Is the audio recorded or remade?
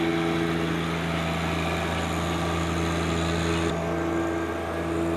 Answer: recorded